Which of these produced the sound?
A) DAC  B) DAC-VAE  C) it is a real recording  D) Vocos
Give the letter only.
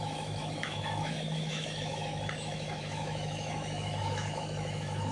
B